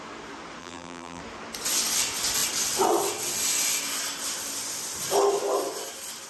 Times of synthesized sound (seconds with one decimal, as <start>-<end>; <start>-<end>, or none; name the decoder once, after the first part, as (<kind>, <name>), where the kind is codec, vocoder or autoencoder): 0.6-1.2 (vocoder, BigVGAN v2)